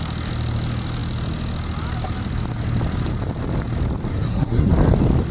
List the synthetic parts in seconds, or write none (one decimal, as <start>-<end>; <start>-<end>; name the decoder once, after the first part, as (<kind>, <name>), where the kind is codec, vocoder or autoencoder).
4.1-4.7 (codec, SNAC)